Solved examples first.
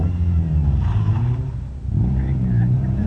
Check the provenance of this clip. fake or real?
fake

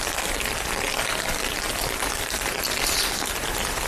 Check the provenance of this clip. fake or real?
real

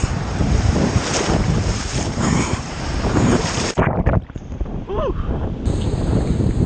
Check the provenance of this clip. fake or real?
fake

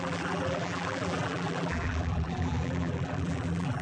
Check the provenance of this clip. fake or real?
fake